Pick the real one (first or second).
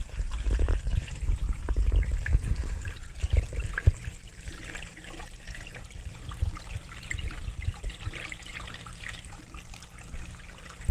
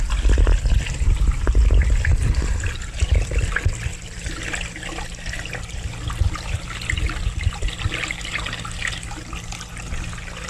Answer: second